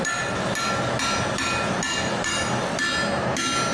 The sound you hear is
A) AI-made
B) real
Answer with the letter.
B